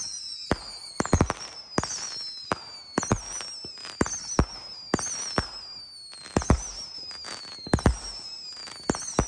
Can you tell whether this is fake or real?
real